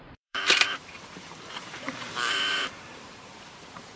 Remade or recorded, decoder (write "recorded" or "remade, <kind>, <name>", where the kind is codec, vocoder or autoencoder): remade, vocoder, BigVGAN v2